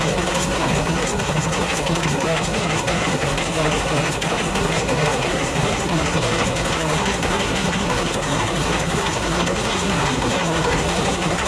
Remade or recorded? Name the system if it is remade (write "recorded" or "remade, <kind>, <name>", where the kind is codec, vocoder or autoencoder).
remade, codec, SNAC